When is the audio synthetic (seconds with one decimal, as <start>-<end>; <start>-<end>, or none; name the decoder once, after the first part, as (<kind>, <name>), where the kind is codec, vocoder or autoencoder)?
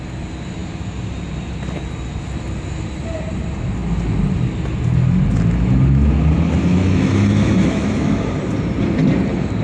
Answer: 6.7-8.2 (autoencoder, DAC-VAE)